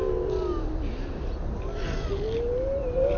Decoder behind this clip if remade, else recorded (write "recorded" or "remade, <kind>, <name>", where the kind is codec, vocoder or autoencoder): recorded